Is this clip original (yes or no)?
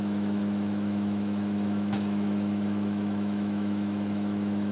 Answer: no